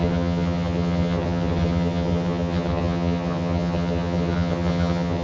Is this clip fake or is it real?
fake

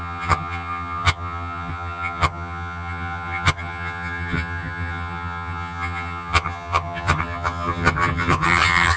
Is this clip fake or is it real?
fake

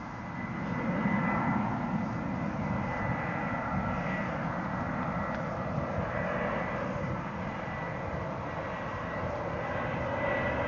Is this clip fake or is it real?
real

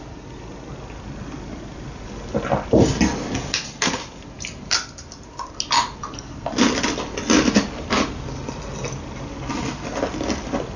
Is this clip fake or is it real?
real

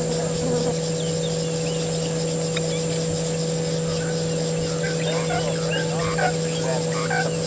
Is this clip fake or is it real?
real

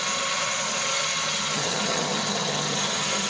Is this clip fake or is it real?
fake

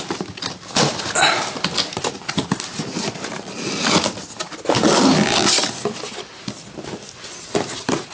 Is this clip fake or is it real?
real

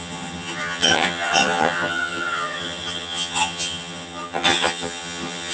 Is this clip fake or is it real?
fake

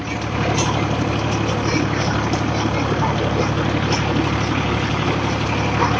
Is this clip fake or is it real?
real